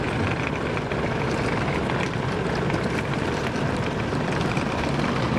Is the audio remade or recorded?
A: recorded